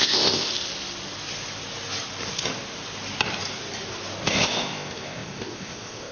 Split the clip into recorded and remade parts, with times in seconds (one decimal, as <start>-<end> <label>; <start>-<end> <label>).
0.0-0.5 remade; 0.5-4.2 recorded; 4.2-6.1 remade